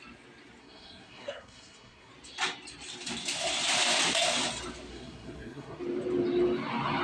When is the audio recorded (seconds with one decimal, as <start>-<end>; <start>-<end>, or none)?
0.0-0.6; 2.1-4.9; 5.8-7.0